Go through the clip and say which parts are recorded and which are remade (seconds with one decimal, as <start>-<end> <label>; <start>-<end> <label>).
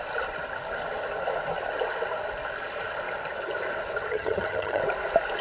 0.0-4.1 recorded; 4.1-4.8 remade; 4.8-5.4 recorded